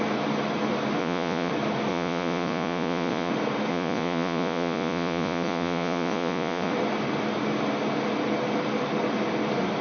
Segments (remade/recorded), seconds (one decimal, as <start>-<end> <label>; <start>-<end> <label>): 0.0-1.0 recorded; 1.0-1.5 remade; 1.5-1.9 recorded; 1.9-3.3 remade; 3.3-3.7 recorded; 3.7-6.7 remade; 6.7-9.8 recorded